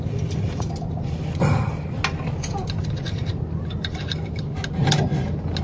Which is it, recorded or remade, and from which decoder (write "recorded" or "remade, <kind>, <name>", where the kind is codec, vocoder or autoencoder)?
recorded